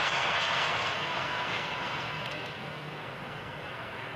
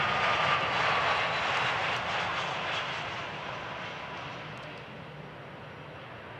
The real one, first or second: second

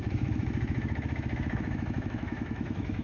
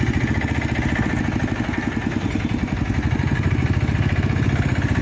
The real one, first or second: second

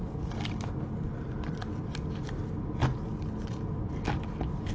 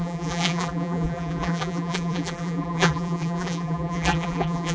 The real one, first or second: first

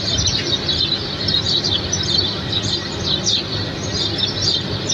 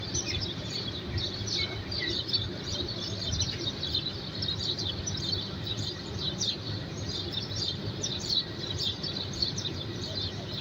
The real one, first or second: first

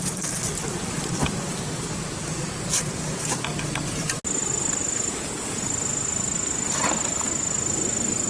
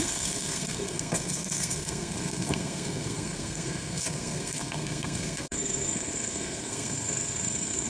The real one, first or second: first